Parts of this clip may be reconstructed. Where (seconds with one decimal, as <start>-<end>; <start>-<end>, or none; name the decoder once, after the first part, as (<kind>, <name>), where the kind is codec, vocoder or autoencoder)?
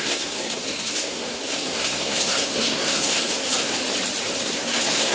0.0-3.8 (codec, SNAC); 4.4-5.1